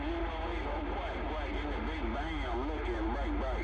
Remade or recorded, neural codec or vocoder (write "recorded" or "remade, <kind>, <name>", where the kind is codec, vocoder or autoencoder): recorded